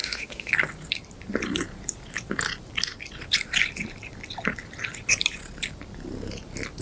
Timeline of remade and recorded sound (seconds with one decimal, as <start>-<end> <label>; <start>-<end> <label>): 0.0-0.5 remade; 0.5-6.8 recorded